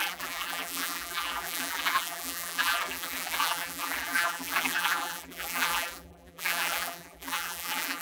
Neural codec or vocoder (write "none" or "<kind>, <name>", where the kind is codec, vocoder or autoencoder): vocoder, BigVGAN v2